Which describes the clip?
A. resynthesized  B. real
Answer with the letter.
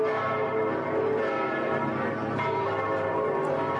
A